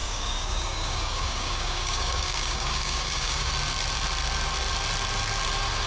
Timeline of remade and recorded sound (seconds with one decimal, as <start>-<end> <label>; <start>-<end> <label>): 0.0-3.5 remade; 3.5-5.9 recorded